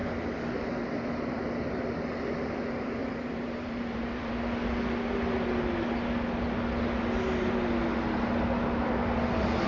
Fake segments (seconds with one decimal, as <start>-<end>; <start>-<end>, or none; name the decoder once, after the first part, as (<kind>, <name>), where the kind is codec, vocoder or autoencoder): 3.0-4.3 (vocoder, BigVGAN v2)